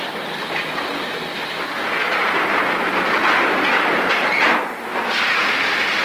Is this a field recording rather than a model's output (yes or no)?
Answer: yes